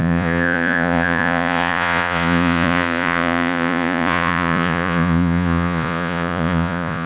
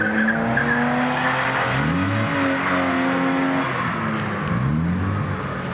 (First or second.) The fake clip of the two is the first